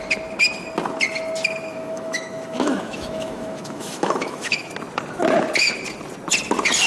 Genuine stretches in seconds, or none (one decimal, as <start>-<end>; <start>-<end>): 0.0-1.7; 4.7-6.9